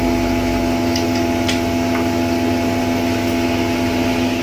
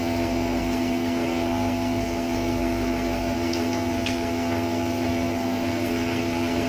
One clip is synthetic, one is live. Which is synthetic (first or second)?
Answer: second